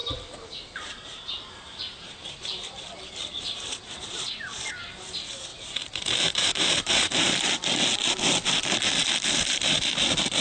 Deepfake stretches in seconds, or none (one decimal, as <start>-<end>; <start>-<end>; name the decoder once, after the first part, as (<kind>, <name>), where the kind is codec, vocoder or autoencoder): 0.0-4.7 (vocoder, BigVGAN v2); 5.5-7.4